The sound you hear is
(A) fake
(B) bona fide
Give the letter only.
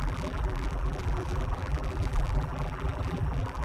A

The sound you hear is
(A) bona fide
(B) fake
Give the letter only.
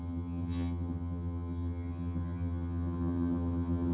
B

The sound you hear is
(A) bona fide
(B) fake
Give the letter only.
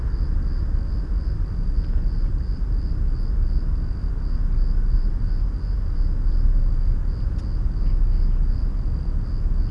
A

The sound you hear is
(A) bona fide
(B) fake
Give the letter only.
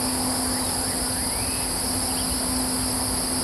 A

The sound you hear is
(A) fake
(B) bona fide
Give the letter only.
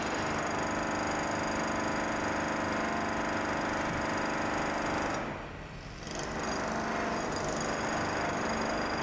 B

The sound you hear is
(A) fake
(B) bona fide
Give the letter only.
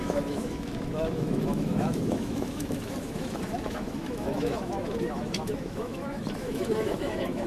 A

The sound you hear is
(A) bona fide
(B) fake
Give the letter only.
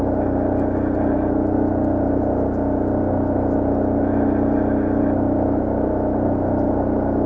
A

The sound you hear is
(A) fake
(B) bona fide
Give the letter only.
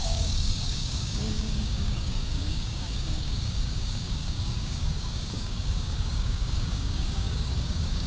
A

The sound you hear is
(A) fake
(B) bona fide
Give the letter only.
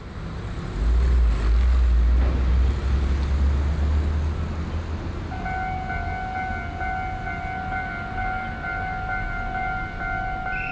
B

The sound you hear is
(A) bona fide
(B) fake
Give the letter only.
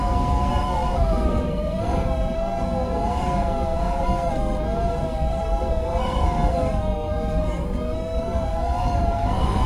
B